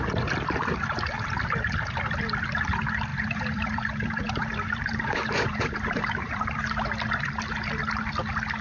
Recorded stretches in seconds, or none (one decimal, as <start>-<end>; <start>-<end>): 0.0-3.1; 6.4-8.6